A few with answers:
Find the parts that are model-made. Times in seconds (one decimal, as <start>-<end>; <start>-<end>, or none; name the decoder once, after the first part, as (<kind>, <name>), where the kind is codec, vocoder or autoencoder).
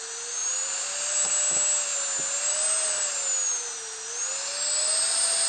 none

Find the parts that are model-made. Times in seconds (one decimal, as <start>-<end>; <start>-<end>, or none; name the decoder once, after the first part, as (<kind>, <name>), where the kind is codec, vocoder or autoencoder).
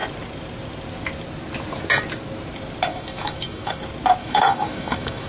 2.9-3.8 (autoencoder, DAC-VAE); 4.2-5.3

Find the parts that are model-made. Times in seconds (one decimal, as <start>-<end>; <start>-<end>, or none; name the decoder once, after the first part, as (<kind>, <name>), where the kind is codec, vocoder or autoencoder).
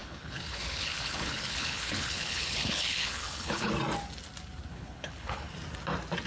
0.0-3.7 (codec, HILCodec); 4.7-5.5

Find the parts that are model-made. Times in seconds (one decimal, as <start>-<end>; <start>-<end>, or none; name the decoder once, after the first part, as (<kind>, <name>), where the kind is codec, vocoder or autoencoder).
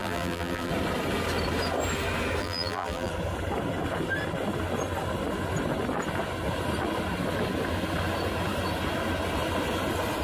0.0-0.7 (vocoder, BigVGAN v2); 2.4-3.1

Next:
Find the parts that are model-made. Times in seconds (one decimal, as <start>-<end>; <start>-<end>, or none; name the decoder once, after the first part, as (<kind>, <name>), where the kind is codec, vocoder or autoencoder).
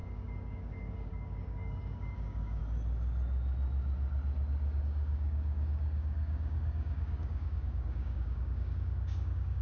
0.0-2.6 (codec, DAC); 4.8-9.6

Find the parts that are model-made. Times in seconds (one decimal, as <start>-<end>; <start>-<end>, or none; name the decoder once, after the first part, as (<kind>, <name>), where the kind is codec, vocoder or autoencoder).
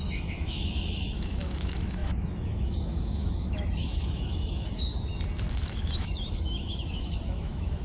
0.0-4.9 (autoencoder, DAC-VAE); 5.5-7.8